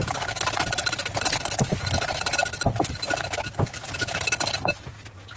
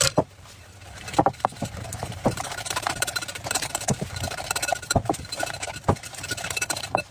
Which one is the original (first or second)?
first